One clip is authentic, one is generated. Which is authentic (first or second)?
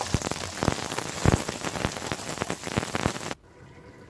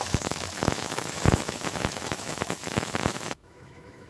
first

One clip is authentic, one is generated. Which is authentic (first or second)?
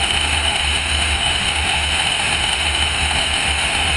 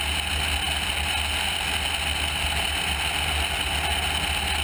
second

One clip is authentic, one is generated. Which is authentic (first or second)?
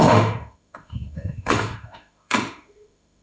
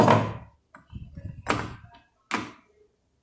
second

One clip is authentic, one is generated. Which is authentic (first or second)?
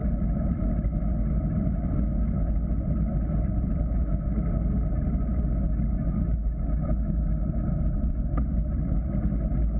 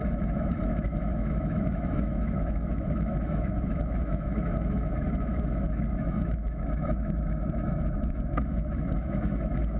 first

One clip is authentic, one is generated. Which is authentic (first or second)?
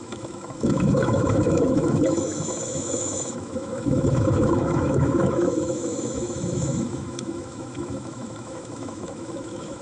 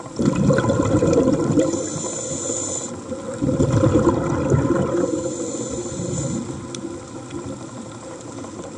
second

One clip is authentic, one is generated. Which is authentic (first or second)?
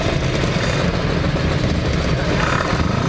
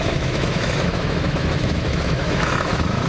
first